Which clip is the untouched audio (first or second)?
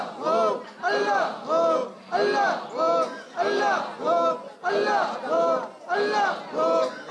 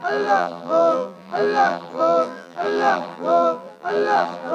first